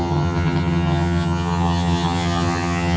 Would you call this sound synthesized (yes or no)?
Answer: yes